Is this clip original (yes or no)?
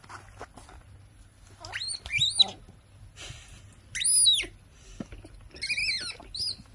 yes